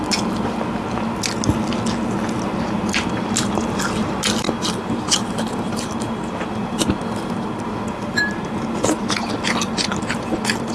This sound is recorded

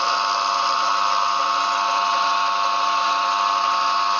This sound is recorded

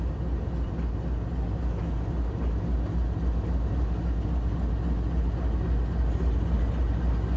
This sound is recorded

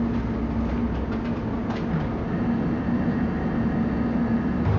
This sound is recorded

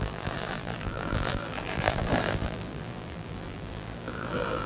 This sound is remade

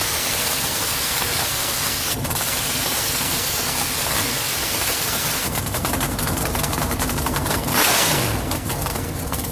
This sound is remade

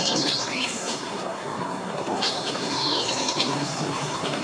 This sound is remade